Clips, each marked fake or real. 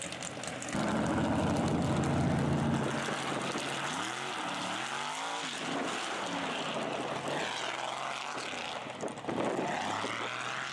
real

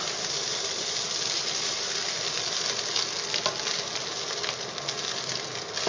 real